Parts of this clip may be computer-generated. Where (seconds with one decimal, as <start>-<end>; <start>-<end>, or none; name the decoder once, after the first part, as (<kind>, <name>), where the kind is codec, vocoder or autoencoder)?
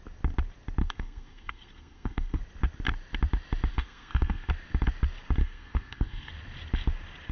0.8-2.4 (codec, SNAC); 3.7-4.5; 5.4-6.3